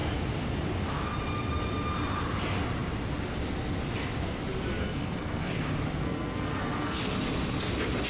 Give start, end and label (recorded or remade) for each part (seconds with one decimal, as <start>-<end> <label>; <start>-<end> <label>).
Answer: 0.0-4.7 recorded; 4.7-5.5 remade; 5.5-6.0 recorded; 6.0-7.0 remade; 7.0-8.1 recorded